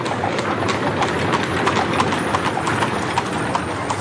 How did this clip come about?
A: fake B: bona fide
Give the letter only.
B